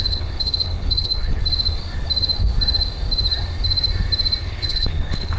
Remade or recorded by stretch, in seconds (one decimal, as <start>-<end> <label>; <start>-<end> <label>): 0.0-1.4 remade; 1.4-4.4 recorded; 4.4-5.4 remade

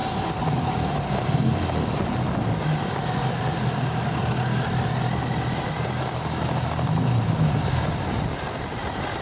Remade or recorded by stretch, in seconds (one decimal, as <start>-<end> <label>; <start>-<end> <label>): 0.0-9.2 recorded

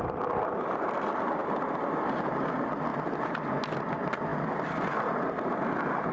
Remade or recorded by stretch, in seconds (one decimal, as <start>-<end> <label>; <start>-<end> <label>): 0.0-6.1 recorded

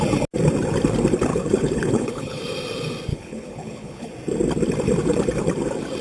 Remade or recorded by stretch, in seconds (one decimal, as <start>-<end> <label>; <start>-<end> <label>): 0.0-1.3 recorded; 1.3-2.4 remade; 2.4-3.1 recorded; 3.1-4.1 remade; 4.1-6.0 recorded

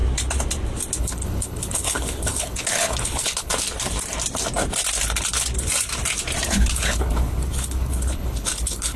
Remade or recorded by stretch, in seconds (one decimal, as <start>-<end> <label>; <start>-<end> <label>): 0.0-1.0 recorded; 1.0-3.5 remade; 3.5-6.5 recorded; 6.5-9.0 remade

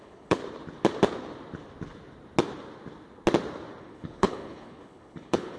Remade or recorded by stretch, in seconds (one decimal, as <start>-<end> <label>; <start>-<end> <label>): 0.0-0.4 remade; 0.4-3.8 recorded; 3.8-5.6 remade

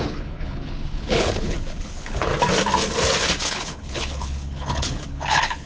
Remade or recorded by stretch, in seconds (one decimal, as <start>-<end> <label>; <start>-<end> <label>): 0.0-2.3 remade; 2.3-3.4 recorded; 3.4-5.7 remade